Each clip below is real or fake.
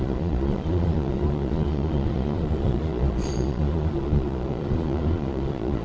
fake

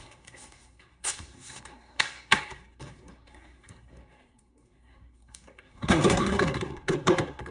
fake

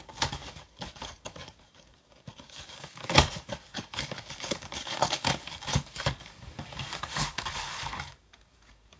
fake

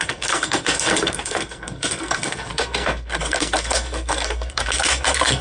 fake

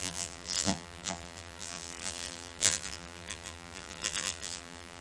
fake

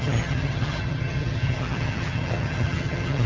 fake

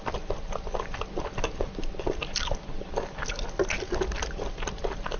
real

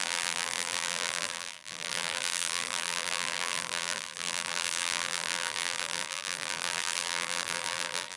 fake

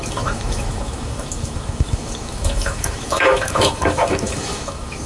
fake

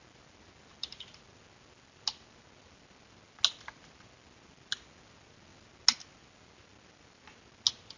real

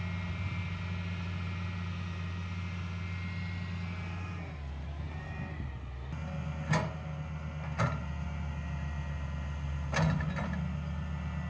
real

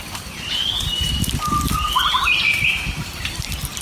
fake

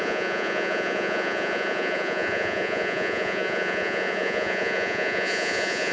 fake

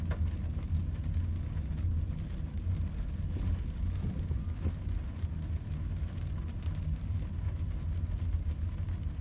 real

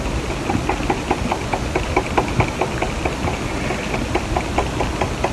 real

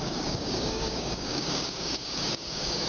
fake